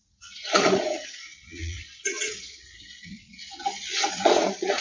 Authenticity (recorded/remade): remade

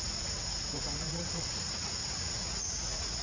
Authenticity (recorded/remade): remade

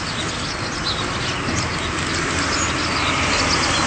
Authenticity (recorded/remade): recorded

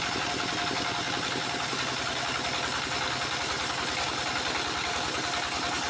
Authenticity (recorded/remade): recorded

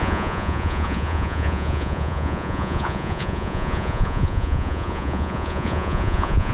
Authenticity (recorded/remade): remade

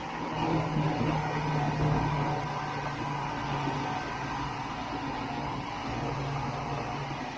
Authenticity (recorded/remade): recorded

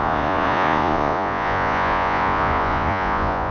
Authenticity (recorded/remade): remade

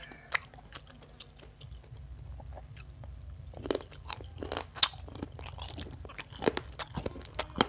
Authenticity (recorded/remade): recorded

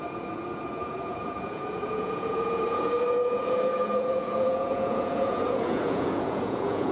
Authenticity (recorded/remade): remade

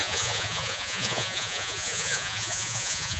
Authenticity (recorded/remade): remade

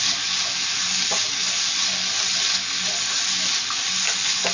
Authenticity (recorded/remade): recorded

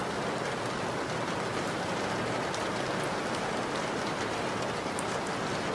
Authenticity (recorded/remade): recorded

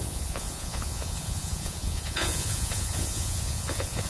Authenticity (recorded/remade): remade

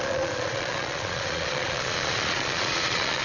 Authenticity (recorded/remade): remade